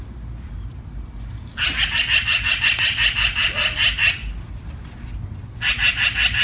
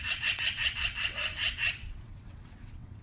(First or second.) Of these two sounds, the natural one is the first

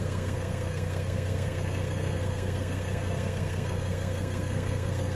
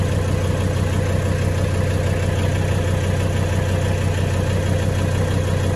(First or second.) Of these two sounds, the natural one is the second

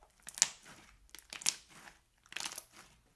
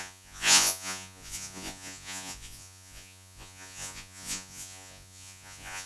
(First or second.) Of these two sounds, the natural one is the first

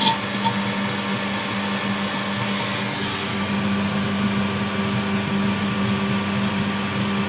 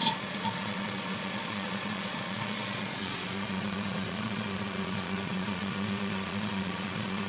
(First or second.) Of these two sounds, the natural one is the first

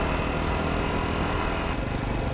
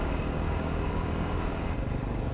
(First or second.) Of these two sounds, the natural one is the first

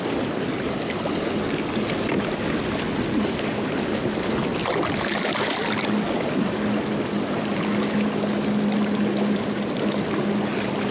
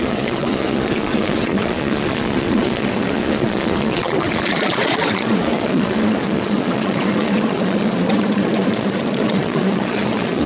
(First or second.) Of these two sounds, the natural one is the first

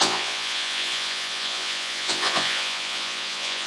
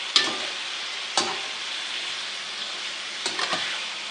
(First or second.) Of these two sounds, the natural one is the second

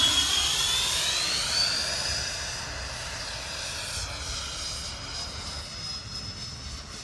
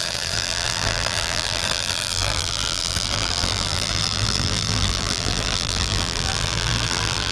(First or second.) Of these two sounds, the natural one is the first